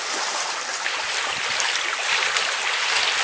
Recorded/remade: recorded